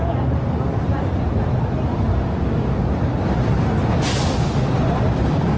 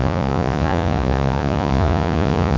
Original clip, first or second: first